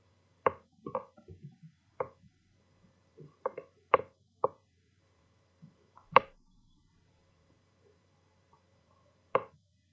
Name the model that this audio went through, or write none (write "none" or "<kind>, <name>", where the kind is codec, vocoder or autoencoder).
vocoder, BigVGAN v2